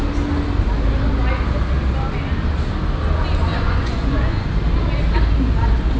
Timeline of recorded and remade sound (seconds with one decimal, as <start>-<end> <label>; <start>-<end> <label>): 0.0-3.5 recorded; 3.5-4.5 remade; 4.5-6.0 recorded